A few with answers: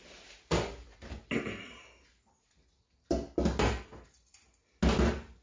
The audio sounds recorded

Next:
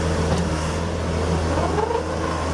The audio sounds recorded